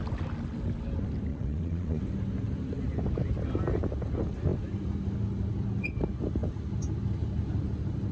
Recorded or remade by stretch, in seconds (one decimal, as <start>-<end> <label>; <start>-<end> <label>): 0.0-1.3 recorded; 1.3-2.0 remade; 2.0-8.1 recorded